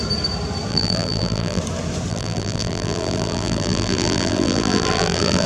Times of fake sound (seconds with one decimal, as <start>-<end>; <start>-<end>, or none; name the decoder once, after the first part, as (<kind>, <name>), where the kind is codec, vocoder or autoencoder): 0.7-1.6 (vocoder, BigVGAN v2); 2.1-5.5